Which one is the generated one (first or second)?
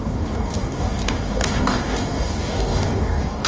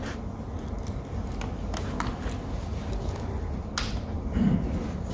first